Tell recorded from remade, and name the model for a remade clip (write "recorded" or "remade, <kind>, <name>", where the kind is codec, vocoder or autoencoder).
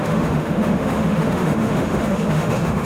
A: remade, autoencoder, DAC-VAE